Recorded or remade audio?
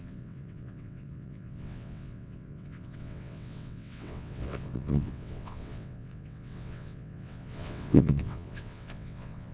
remade